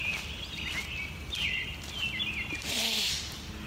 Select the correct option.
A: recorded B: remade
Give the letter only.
A